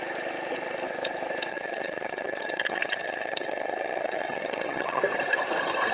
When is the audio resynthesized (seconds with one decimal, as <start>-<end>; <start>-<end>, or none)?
1.5-5.0